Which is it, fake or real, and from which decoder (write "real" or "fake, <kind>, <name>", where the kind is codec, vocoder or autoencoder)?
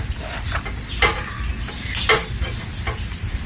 real